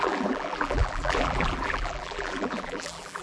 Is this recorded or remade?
remade